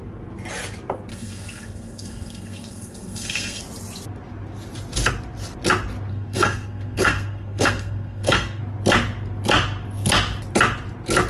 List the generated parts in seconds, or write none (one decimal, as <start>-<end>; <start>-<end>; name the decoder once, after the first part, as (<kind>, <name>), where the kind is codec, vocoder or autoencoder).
1.1-3.6 (codec, SNAC); 6.1-8.6